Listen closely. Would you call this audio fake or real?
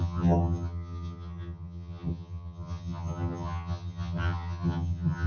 fake